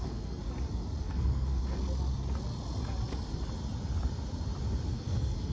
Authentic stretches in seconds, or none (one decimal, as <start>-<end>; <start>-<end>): 0.4-1.0; 1.6-4.9